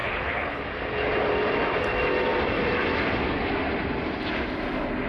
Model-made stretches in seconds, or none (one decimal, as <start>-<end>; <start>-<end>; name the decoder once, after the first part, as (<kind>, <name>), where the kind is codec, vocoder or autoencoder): 0.0-0.6 (codec, HILCodec)